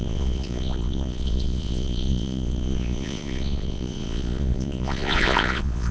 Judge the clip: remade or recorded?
remade